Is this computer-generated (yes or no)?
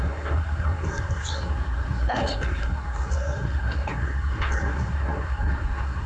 yes